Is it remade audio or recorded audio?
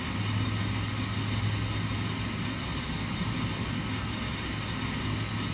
recorded